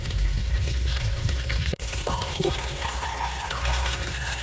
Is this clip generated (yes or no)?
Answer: yes